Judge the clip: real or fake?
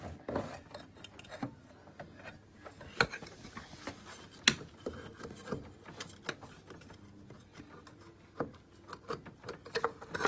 real